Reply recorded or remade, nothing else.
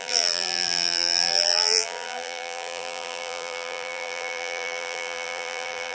remade